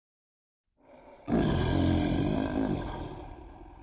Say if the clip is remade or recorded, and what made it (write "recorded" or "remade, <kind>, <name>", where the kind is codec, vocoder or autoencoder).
recorded